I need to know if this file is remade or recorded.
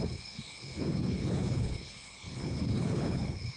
remade